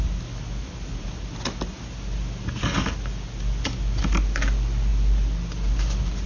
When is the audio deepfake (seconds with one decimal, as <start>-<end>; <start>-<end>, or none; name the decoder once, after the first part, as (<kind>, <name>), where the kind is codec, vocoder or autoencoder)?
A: none